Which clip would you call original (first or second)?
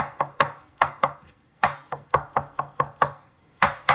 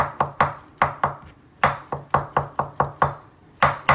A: second